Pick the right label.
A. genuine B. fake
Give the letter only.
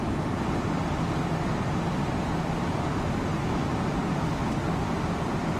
A